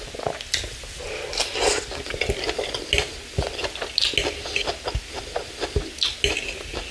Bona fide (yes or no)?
yes